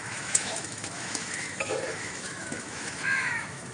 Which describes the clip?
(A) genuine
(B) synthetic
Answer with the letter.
B